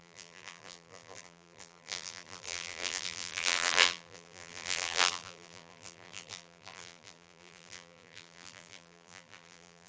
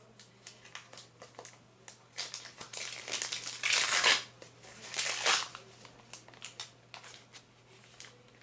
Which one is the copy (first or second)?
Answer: first